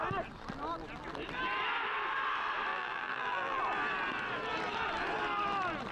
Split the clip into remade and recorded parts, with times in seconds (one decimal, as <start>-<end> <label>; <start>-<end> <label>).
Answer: 0.0-2.7 recorded; 2.7-3.6 remade; 3.6-5.9 recorded